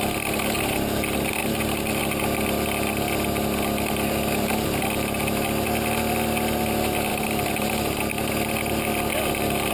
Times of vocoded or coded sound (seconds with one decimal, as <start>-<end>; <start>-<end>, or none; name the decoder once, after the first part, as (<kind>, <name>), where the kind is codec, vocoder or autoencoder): 1.4-2.0 (vocoder, BigVGAN v2)